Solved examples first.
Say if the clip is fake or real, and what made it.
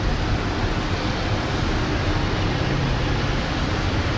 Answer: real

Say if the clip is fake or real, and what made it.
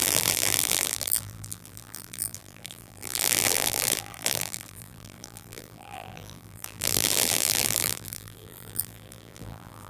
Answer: fake, vocoder, BigVGAN v2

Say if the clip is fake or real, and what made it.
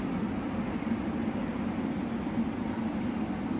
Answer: fake, vocoder, BigVGAN v2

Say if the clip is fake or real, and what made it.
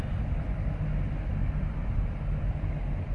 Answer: real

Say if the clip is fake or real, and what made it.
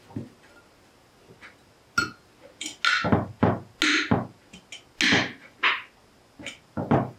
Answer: real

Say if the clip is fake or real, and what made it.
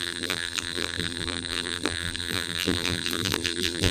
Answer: fake, vocoder, BigVGAN v2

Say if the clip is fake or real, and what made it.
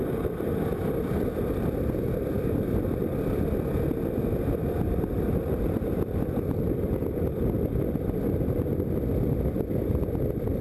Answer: fake, vocoder, BigVGAN v2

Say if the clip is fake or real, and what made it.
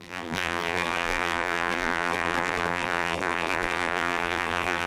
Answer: fake, vocoder, BigVGAN v2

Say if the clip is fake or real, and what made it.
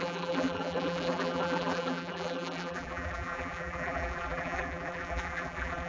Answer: fake, vocoder, BigVGAN v2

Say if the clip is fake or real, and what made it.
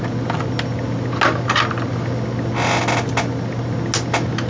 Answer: real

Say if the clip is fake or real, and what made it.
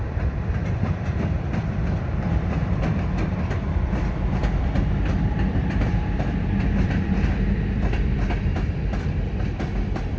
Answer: fake, vocoder, BigVGAN v2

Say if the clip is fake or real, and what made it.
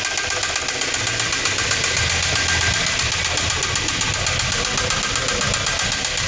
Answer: real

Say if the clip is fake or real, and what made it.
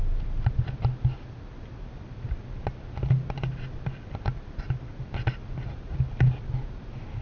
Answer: real